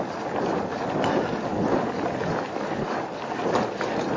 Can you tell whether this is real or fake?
real